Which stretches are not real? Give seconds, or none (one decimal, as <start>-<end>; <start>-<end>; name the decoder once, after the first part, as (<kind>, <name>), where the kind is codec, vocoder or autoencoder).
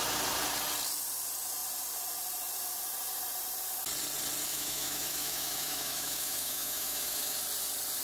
4.5-7.4 (autoencoder, DAC-VAE)